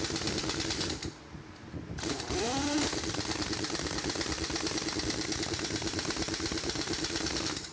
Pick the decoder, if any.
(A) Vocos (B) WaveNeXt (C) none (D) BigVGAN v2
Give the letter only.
D